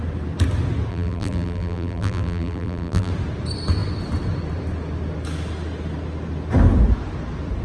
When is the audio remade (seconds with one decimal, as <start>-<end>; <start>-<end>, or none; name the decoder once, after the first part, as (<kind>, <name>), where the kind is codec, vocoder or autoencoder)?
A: 0.9-3.1 (vocoder, BigVGAN v2)